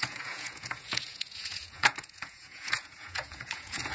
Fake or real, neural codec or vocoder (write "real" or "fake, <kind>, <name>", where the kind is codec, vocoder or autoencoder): fake, vocoder, Vocos